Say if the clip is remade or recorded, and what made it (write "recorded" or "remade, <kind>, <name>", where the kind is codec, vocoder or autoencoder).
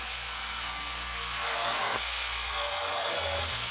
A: remade, codec, SNAC